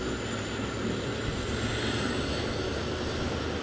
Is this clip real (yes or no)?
yes